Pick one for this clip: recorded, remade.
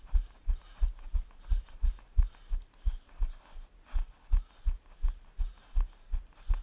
recorded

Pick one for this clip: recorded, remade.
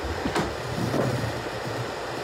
recorded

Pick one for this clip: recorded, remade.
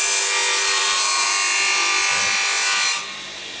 recorded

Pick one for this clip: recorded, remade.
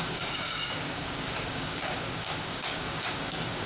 remade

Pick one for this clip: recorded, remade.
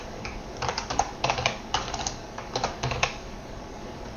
remade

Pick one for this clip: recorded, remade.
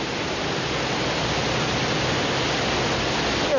recorded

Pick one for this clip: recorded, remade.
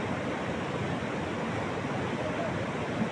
recorded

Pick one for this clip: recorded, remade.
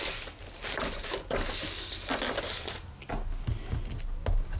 recorded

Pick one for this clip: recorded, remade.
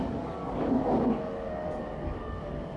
remade